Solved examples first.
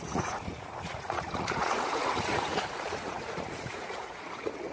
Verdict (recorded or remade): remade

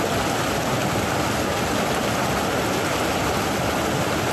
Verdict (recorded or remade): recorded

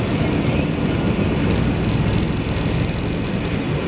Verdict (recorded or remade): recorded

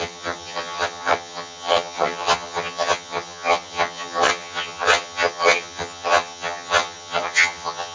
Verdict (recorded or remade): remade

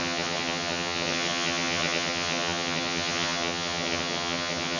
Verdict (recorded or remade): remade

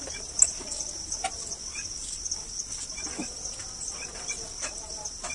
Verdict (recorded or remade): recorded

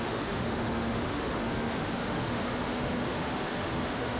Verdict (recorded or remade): remade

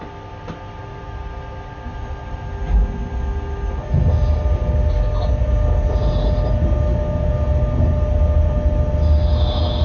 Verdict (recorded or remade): recorded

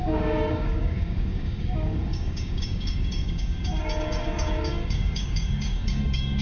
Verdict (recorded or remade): remade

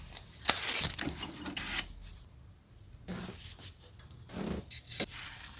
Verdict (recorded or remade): recorded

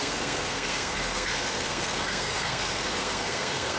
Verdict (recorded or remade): remade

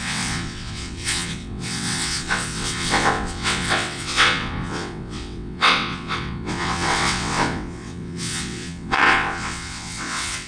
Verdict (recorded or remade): remade